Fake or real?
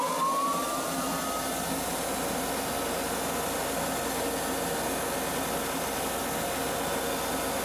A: real